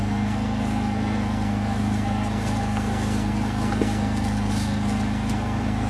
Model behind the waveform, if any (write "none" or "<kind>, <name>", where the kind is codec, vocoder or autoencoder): codec, SNAC